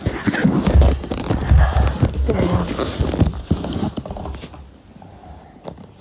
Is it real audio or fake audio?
real